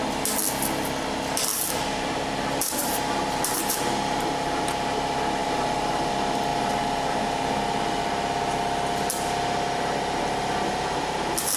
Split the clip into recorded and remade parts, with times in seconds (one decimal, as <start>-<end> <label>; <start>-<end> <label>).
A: 0.0-1.5 recorded; 1.5-4.6 remade; 4.6-5.4 recorded; 5.4-6.1 remade; 6.1-6.5 recorded; 6.5-8.0 remade; 8.0-11.6 recorded